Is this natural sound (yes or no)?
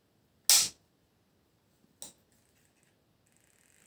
yes